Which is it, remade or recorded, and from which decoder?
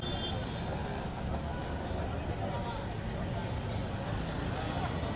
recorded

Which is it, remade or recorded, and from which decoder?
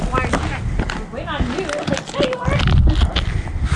recorded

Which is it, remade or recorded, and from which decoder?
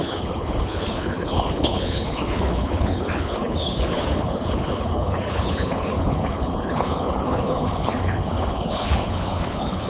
remade, codec, HILCodec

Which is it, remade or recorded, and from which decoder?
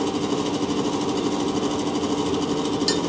recorded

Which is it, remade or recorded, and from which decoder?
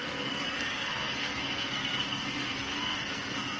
remade, codec, SNAC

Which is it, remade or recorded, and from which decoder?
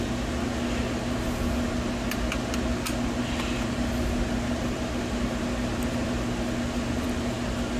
recorded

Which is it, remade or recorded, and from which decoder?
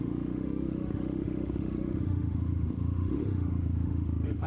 remade, autoencoder, DAC-VAE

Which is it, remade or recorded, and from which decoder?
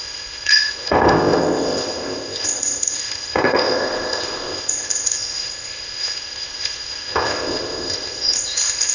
remade, codec, ZipCodec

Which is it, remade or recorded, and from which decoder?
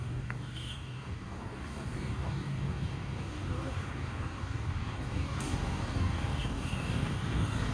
remade, codec, DAC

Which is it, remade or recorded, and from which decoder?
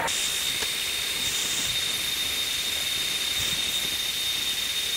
recorded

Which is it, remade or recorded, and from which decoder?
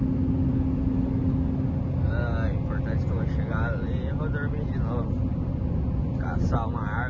recorded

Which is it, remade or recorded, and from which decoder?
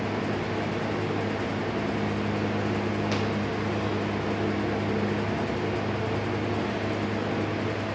recorded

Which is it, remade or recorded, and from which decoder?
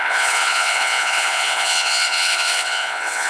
remade, vocoder, WaveNeXt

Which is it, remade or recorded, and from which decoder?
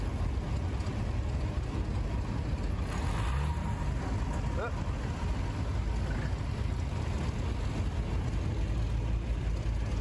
recorded